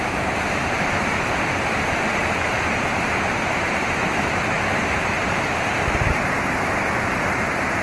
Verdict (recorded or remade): remade